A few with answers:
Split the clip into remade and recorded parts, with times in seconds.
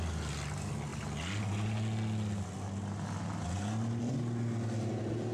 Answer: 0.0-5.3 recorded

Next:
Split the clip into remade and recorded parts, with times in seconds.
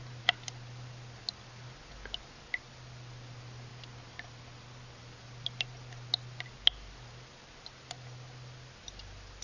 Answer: 0.0-9.4 recorded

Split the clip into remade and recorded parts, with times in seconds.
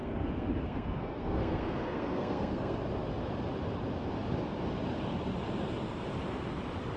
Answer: 0.0-2.8 remade; 2.8-7.0 recorded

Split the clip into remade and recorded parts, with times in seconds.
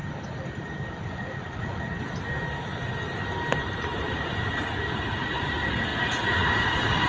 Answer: 0.0-1.0 recorded; 1.0-1.9 remade; 1.9-4.1 recorded; 4.1-7.1 remade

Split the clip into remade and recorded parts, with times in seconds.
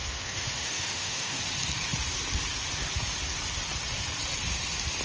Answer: 0.0-1.4 remade; 1.4-5.0 recorded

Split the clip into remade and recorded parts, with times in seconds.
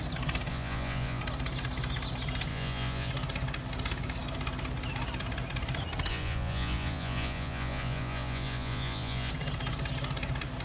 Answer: 0.0-0.5 recorded; 0.5-1.2 remade; 1.2-2.5 recorded; 2.5-3.1 remade; 3.1-6.1 recorded; 6.1-9.3 remade; 9.3-10.6 recorded